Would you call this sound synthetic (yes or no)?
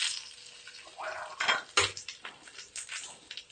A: no